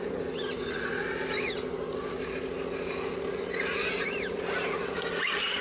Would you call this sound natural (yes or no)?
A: yes